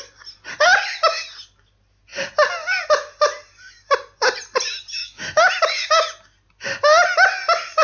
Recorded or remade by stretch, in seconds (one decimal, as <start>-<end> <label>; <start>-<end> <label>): 0.0-5.0 recorded; 5.0-5.5 remade; 5.5-7.8 recorded